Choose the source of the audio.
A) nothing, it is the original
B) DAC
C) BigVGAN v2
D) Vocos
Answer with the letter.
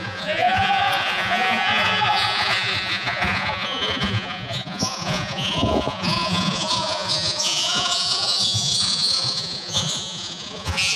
D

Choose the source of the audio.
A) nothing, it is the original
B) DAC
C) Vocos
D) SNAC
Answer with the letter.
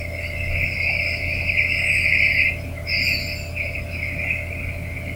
A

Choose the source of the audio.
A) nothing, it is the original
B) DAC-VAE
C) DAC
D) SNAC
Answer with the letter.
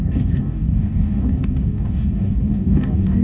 C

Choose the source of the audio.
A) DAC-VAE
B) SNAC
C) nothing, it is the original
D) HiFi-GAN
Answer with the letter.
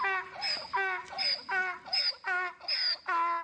C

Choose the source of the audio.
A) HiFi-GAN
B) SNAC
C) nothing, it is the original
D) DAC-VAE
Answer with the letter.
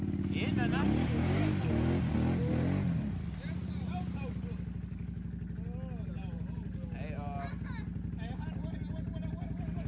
C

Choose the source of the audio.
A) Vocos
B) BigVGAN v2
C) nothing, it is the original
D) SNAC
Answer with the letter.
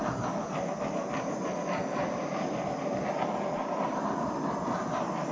C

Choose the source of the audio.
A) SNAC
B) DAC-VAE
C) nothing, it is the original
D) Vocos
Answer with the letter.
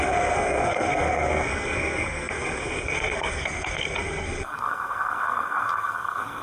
A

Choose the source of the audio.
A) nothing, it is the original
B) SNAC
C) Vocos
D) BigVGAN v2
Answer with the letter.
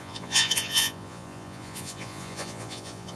C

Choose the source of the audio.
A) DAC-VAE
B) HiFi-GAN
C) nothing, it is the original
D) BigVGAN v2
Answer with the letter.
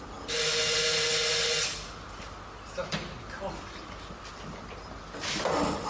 C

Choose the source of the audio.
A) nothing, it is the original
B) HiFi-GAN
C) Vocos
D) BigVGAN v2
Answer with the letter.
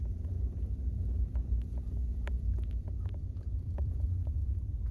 D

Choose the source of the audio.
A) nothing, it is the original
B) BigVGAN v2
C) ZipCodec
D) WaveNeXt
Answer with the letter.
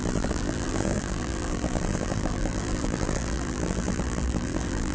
B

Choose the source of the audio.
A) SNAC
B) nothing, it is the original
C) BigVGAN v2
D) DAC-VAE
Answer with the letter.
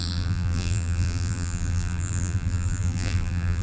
C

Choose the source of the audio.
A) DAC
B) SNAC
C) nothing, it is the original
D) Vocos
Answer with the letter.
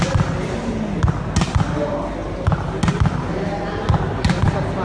C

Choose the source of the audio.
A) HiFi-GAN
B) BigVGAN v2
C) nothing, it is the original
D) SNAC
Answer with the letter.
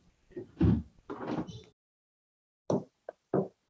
C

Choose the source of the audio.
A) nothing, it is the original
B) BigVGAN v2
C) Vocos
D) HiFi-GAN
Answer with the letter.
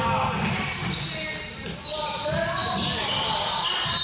A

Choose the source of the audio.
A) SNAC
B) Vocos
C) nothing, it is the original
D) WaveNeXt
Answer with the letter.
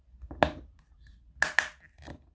C